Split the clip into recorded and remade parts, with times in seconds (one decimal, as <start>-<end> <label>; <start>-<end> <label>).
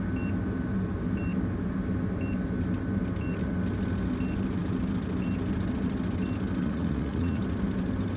0.0-6.6 recorded; 6.6-7.4 remade; 7.4-8.2 recorded